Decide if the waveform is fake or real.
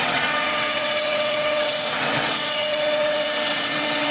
fake